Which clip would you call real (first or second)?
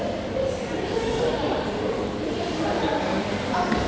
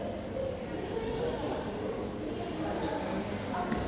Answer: second